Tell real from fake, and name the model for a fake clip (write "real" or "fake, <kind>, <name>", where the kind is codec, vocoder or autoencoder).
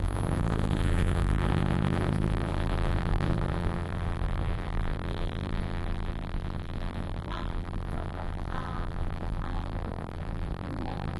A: fake, vocoder, BigVGAN v2